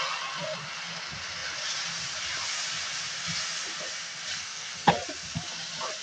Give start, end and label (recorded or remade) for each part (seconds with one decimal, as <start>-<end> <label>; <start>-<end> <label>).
0.0-4.3 recorded; 4.3-4.9 remade; 4.9-6.0 recorded